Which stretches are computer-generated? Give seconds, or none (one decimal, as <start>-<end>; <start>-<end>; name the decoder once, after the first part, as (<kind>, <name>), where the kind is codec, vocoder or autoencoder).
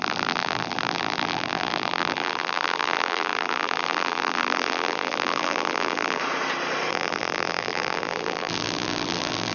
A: 0.0-6.2 (vocoder, BigVGAN v2); 6.9-9.5